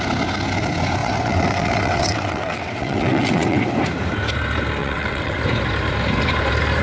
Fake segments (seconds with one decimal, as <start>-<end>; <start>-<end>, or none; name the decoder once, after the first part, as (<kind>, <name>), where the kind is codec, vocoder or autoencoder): 1.0-3.6 (vocoder, WaveNeXt); 4.8-5.4